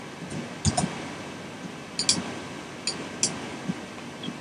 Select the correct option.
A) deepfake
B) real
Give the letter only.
B